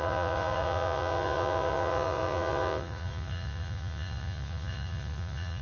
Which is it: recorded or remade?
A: remade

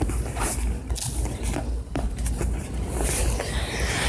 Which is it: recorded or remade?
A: recorded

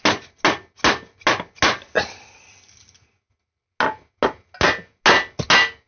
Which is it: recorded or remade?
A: recorded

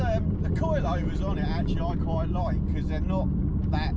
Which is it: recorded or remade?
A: recorded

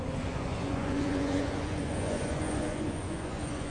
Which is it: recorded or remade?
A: remade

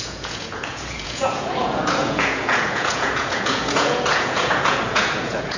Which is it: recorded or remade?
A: remade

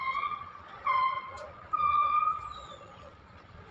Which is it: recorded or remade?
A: remade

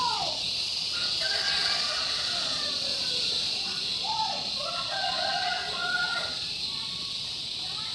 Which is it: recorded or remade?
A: remade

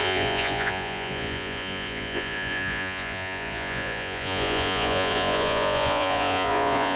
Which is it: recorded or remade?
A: remade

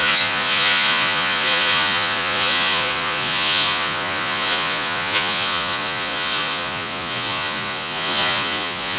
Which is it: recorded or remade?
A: remade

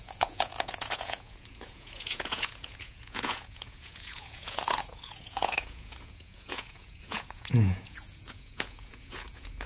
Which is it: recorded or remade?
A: remade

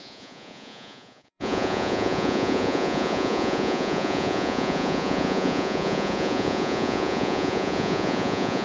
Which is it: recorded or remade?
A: remade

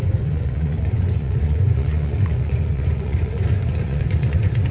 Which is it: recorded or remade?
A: remade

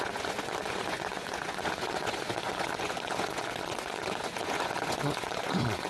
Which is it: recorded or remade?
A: remade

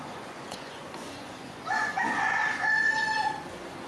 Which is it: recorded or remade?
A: remade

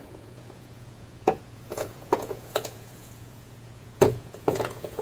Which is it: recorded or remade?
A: remade